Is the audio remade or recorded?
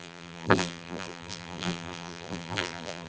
remade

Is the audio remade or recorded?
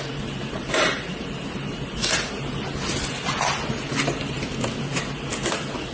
recorded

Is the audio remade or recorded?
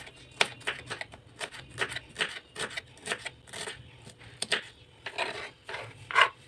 recorded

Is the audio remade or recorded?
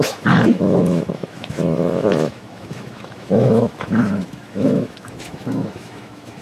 remade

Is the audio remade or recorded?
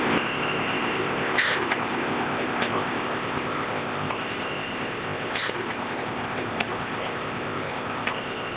remade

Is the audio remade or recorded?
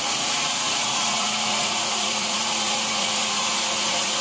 remade